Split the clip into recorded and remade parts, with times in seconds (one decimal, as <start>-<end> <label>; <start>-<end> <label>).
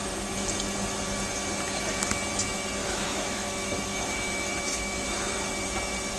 0.0-2.8 recorded; 2.8-5.5 remade; 5.5-6.2 recorded